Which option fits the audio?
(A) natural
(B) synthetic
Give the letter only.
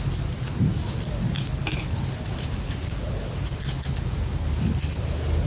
A